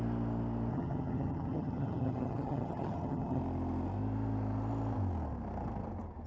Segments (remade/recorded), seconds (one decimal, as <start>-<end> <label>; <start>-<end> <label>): 0.0-0.7 recorded; 0.7-3.4 remade; 3.4-6.3 recorded